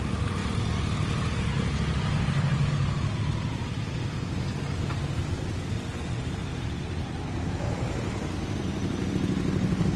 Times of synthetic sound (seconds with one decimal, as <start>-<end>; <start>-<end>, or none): none